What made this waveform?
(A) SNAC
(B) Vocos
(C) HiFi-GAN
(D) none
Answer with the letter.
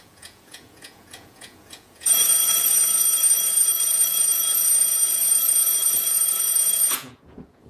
B